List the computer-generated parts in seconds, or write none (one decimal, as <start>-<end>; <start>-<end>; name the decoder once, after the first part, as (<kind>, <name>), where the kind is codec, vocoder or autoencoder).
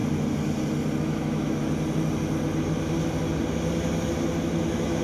1.0-1.6 (autoencoder, DAC-VAE); 4.6-5.0